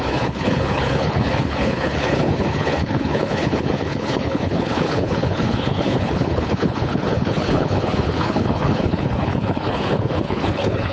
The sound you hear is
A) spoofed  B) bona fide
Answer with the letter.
A